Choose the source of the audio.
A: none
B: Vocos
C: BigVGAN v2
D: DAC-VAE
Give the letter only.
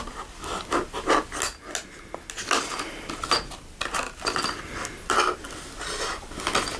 A